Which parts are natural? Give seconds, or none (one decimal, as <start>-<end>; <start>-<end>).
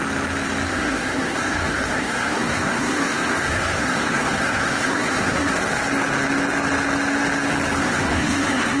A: 0.0-0.7; 5.5-7.8